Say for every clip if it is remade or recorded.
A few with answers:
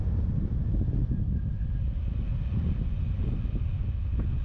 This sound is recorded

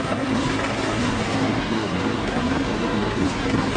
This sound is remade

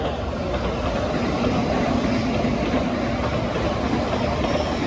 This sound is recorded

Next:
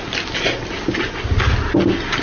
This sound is recorded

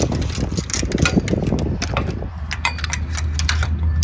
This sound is recorded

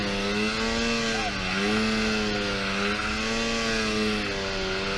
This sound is recorded